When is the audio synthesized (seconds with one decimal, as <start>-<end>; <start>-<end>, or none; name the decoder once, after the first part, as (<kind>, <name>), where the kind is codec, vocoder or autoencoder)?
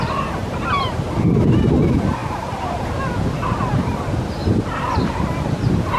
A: 0.4-1.1 (vocoder, BigVGAN v2); 2.2-3.0; 4.4-5.0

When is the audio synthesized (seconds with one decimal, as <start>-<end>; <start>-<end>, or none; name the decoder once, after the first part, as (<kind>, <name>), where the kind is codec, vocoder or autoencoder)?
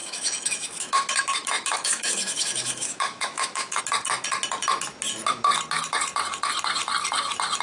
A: 0.0-3.8 (autoencoder, DAC-VAE)